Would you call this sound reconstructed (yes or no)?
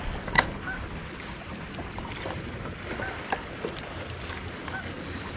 no